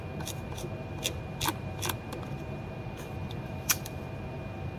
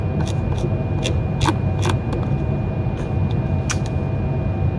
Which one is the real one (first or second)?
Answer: second